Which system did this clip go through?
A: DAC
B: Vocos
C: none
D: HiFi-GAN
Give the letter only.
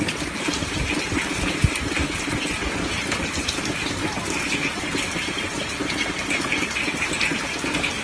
C